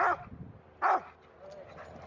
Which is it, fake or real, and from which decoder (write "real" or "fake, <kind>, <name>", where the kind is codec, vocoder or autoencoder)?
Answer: real